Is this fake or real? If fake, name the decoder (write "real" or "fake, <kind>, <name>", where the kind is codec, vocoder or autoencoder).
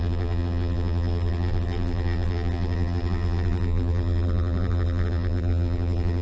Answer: fake, vocoder, BigVGAN v2